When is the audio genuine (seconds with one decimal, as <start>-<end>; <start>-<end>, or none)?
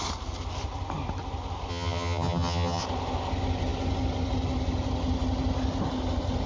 0.0-1.7; 2.8-6.5